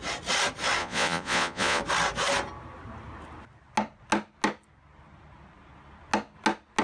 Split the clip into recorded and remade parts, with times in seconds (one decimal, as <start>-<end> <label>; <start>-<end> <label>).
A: 0.0-0.8 recorded; 0.8-1.8 remade; 1.8-6.8 recorded